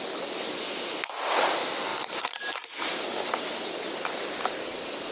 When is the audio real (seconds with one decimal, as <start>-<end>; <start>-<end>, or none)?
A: 0.0-5.1